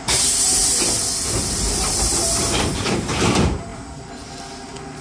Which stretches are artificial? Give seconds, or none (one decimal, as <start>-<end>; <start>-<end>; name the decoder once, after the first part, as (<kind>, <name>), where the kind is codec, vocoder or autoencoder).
0.0-0.6 (vocoder, BigVGAN v2); 1.9-3.7